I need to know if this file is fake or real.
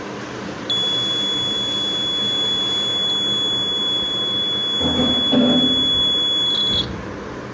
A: real